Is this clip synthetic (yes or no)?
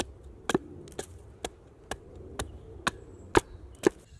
no